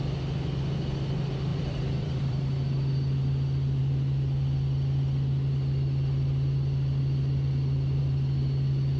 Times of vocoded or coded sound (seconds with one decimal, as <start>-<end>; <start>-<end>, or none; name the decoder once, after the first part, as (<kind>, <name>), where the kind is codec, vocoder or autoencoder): 1.5-2.4 (vocoder, BigVGAN v2)